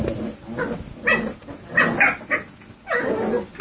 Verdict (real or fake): real